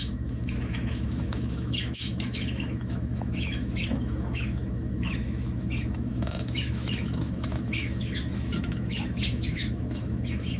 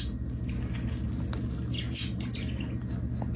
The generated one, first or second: first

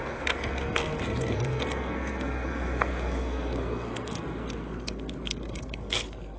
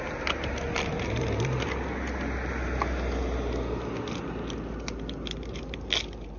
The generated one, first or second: first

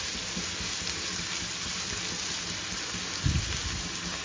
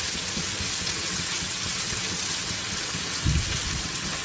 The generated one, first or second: second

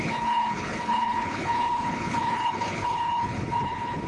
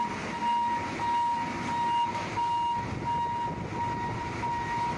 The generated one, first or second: first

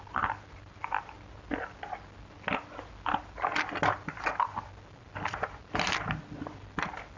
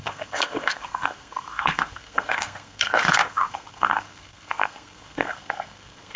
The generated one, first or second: second